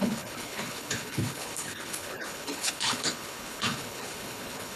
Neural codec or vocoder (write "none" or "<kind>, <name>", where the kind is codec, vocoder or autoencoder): codec, HILCodec